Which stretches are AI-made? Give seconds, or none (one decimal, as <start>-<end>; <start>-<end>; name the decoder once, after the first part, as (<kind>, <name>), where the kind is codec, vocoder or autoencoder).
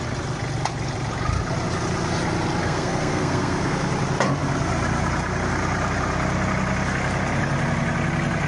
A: 2.6-3.9 (codec, SNAC)